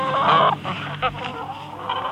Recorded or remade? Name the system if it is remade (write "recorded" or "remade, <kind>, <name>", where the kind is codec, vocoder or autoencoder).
recorded